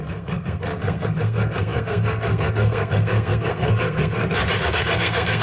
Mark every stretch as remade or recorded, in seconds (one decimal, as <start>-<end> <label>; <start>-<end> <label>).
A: 0.0-4.2 remade; 4.2-4.7 recorded; 4.7-5.4 remade

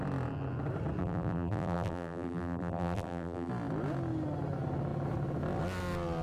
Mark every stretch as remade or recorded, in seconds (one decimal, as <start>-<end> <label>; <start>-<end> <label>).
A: 0.0-1.0 recorded; 1.0-3.5 remade; 3.5-6.2 recorded

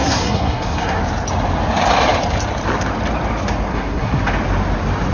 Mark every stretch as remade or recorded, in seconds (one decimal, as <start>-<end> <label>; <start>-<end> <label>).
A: 0.0-1.0 remade; 1.0-3.7 recorded; 3.7-4.2 remade; 4.2-5.1 recorded